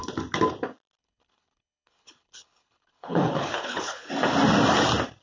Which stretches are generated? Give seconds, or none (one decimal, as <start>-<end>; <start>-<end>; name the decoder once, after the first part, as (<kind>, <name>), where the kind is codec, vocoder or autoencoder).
1.0-4.1 (codec, HILCodec)